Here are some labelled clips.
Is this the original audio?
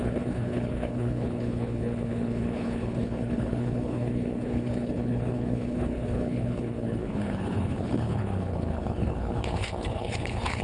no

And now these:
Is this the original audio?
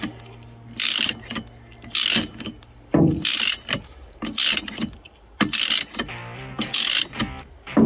yes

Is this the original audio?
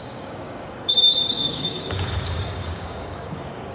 no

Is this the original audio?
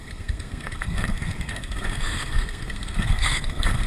no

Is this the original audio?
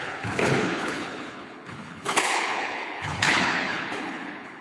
no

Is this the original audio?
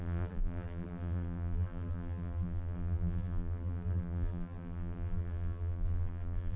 no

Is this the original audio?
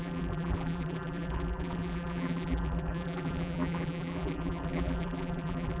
no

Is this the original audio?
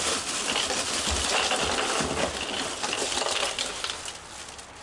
yes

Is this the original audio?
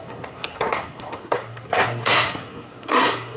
no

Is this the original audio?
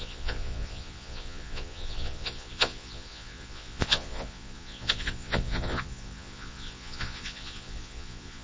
no